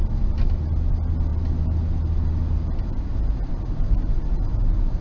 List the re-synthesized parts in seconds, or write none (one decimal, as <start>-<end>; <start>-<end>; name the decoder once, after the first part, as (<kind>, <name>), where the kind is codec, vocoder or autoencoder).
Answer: none